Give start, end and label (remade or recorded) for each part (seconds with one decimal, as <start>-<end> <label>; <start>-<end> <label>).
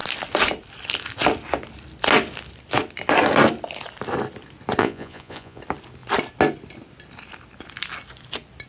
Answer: 0.0-4.8 recorded; 4.8-5.6 remade; 5.6-8.7 recorded